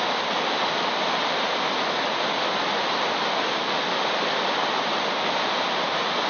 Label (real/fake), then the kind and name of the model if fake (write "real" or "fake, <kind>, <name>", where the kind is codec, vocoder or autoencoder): real